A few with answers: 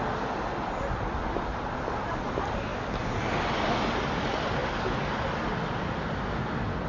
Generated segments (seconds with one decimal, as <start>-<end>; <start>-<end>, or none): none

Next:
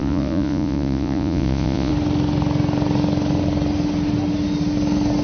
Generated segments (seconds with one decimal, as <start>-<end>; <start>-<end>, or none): 0.0-1.9

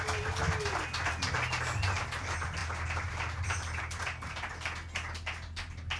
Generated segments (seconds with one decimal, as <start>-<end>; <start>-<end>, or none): none